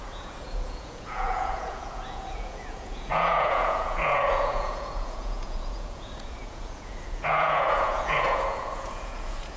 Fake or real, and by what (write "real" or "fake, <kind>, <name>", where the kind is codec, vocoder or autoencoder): fake, vocoder, Vocos